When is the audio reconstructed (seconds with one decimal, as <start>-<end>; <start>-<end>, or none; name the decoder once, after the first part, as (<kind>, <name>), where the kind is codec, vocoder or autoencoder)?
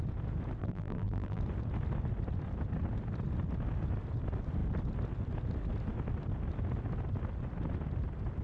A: 0.6-1.4 (vocoder, BigVGAN v2)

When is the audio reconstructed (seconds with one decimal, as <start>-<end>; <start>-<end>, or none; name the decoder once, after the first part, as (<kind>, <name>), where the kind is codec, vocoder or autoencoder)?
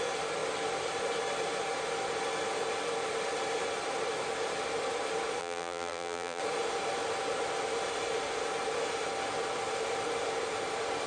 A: 5.4-6.4 (vocoder, BigVGAN v2)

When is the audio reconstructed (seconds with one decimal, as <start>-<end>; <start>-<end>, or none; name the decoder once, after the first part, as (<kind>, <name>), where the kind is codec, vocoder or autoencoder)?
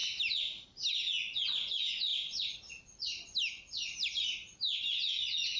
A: 0.9-2.1 (vocoder, Vocos)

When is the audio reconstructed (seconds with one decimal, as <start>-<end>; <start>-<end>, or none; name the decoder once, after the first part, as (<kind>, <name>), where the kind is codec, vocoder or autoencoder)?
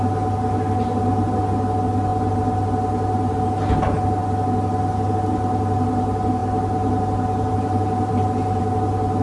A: none